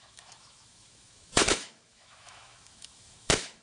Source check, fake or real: fake